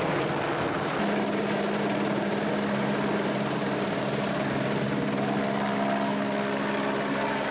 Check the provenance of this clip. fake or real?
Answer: real